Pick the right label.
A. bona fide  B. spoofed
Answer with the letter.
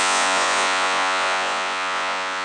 B